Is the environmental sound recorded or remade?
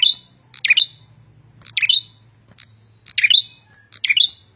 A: recorded